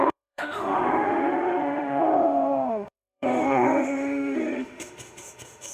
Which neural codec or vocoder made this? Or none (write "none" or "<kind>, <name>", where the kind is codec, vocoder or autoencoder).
autoencoder, DAC-VAE